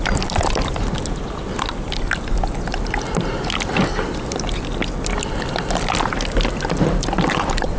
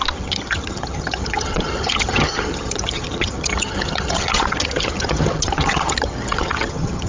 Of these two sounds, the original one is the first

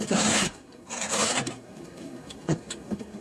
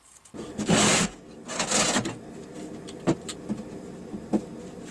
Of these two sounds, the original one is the second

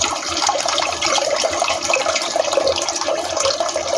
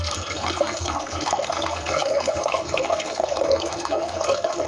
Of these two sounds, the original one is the first